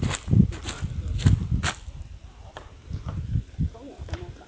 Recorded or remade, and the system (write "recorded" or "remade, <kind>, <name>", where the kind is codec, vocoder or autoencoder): recorded